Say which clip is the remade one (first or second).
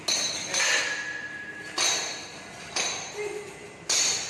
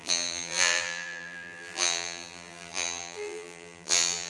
second